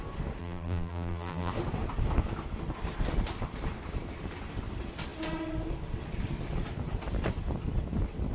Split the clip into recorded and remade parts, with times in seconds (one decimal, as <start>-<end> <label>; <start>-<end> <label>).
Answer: 0.0-0.4 recorded; 0.4-1.5 remade; 1.5-8.3 recorded